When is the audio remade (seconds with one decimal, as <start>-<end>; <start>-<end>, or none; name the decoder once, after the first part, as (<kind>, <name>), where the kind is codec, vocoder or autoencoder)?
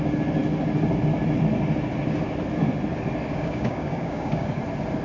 3.3-4.6 (codec, DAC)